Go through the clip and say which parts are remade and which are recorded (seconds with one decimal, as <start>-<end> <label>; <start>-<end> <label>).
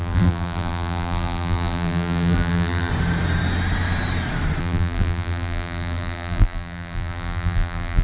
0.0-2.9 remade; 2.9-4.6 recorded; 4.6-8.0 remade